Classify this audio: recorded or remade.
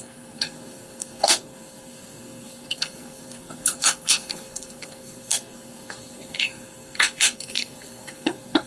remade